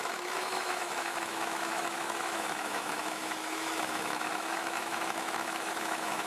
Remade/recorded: remade